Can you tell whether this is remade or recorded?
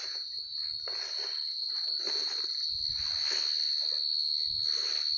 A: recorded